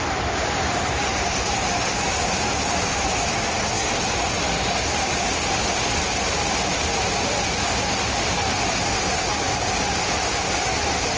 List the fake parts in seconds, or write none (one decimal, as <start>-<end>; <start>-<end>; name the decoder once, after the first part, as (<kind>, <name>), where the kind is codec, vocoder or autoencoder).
3.3-4.0 (codec, SNAC)